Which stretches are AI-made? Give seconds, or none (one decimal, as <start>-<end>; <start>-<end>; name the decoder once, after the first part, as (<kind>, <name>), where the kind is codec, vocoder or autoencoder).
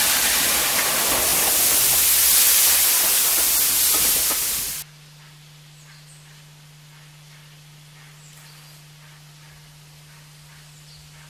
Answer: none